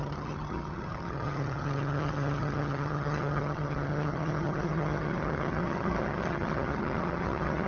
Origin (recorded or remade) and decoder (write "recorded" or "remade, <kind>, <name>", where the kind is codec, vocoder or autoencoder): remade, vocoder, HiFi-GAN